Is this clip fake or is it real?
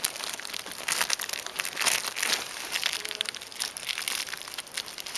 real